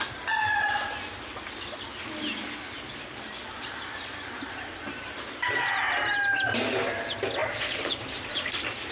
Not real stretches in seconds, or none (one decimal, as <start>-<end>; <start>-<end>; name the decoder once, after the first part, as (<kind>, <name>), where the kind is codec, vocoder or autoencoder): 3.4-4.8 (vocoder, BigVGAN v2); 7.4-8.5